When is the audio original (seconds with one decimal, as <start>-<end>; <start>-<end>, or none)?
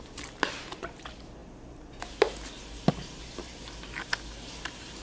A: 0.0-5.0